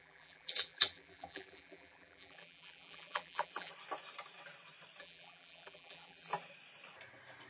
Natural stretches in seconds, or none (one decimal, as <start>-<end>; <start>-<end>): 3.7-5.0; 6.3-7.5